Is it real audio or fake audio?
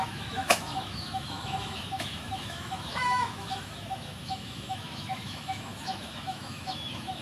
fake